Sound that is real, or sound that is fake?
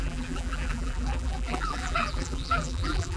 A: fake